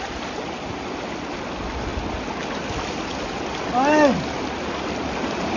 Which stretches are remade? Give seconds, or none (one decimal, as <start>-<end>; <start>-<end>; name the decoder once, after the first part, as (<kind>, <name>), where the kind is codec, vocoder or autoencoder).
none